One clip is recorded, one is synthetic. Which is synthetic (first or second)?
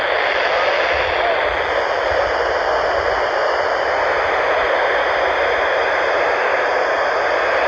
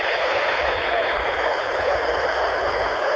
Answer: second